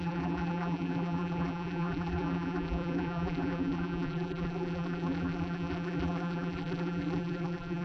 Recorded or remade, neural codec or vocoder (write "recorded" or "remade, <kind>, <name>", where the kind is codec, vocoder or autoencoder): remade, vocoder, BigVGAN v2